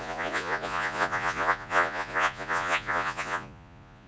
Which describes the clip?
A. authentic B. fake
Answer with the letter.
B